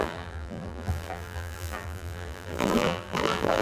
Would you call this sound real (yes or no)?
no